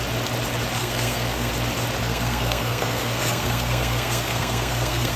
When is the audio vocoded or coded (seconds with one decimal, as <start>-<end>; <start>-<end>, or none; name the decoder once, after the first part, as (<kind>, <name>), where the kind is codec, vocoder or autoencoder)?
0.8-1.5 (codec, SNAC); 2.0-5.2